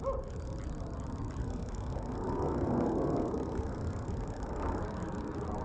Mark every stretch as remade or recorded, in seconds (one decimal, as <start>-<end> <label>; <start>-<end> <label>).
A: 0.0-1.4 recorded; 1.4-4.8 remade; 4.8-5.6 recorded